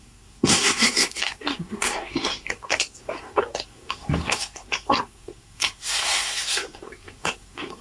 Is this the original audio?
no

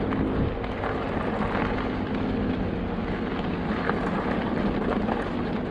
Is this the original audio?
yes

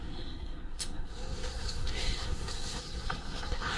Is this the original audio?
no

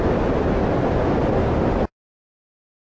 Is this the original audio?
yes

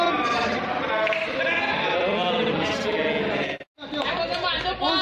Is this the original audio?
yes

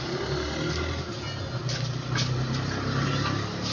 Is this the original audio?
yes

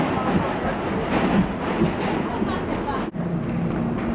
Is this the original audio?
yes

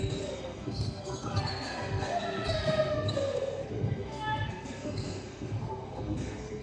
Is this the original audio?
no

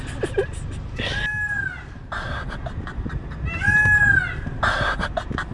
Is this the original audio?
yes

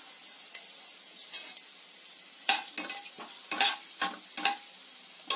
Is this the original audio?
yes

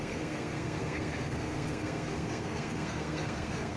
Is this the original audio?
no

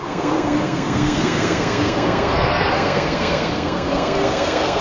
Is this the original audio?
no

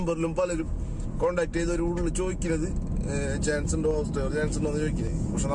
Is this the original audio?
yes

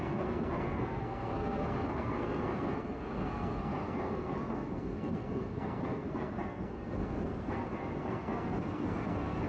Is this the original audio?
no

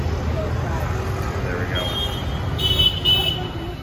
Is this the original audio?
yes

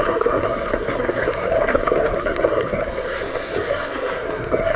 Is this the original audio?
no